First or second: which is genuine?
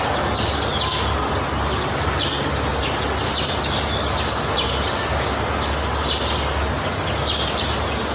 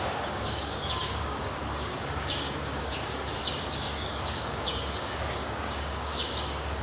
first